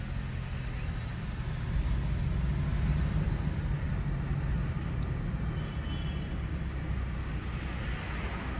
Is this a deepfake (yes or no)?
no